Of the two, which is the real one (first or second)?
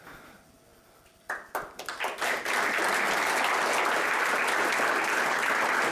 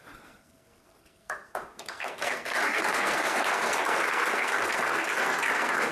first